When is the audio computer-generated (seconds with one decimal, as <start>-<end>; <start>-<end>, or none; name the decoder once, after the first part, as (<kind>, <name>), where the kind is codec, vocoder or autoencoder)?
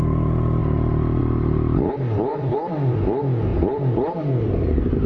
0.6-1.2 (vocoder, BigVGAN v2); 2.3-3.0; 3.5-5.1